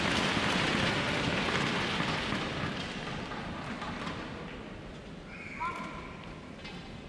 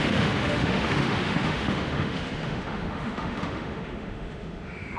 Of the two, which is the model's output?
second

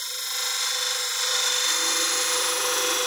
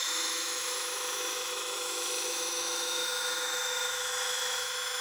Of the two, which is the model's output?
second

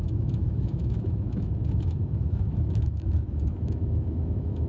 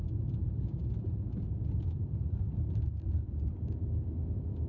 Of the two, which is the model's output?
first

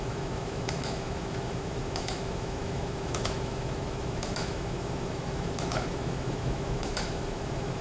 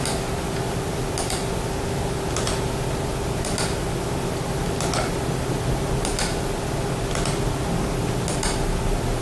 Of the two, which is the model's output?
first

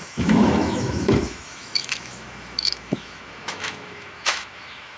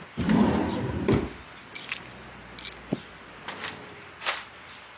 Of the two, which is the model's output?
first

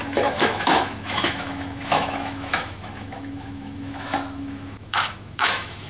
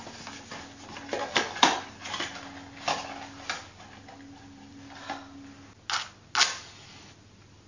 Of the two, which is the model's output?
first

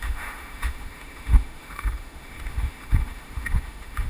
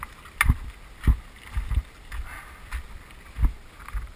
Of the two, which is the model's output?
first